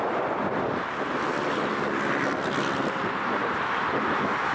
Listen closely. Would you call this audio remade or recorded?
recorded